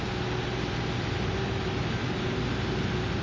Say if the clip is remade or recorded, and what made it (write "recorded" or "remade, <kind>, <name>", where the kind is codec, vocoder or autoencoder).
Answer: recorded